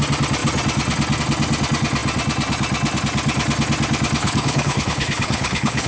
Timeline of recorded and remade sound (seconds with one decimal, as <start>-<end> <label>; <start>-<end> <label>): 0.0-4.2 recorded; 4.2-5.9 remade